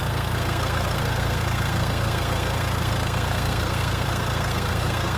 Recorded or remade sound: remade